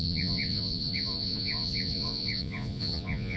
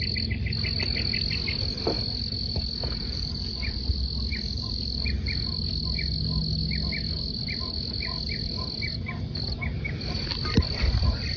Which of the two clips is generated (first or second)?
first